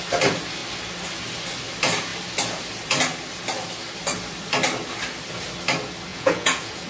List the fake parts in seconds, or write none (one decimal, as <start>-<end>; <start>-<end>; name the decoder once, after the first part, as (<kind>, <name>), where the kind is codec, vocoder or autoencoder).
6.1-6.9 (vocoder, Vocos)